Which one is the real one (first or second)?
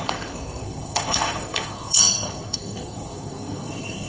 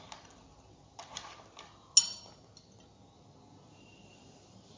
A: second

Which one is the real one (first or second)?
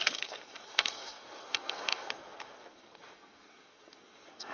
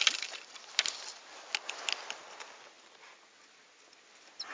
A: second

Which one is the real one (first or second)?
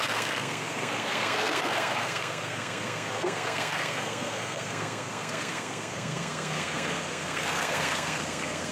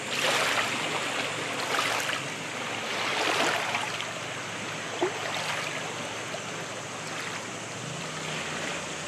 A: second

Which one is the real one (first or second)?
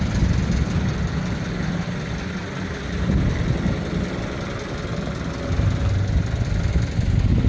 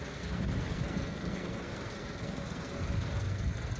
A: first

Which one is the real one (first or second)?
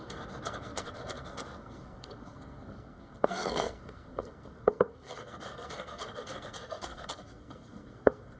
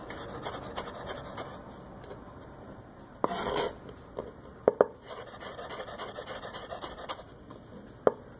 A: second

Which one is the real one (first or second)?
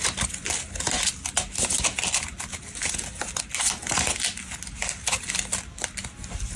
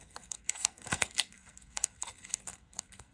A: first